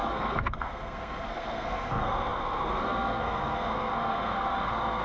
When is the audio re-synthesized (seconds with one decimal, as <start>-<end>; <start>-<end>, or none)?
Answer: 0.0-5.0